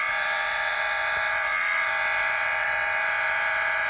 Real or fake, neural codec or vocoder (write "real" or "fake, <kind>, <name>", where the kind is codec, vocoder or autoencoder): fake, vocoder, WaveNeXt